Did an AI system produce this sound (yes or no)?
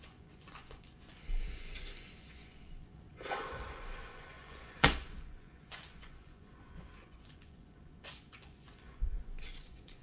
yes